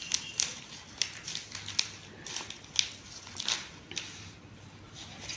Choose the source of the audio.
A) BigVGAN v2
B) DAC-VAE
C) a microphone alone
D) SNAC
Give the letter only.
C